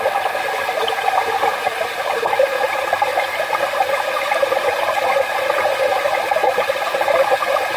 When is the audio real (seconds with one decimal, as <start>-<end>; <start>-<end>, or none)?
0.0-7.8

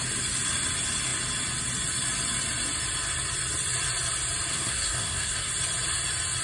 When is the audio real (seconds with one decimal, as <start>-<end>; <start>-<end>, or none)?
0.0-4.5; 5.5-6.4